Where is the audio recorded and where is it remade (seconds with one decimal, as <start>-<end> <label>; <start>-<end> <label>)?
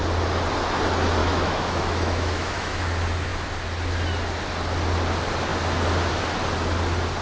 0.0-1.2 recorded; 1.2-2.8 remade; 2.8-7.2 recorded